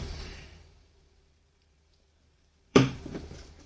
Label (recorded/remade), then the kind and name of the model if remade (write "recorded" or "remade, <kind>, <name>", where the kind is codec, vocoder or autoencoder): remade, vocoder, BigVGAN v2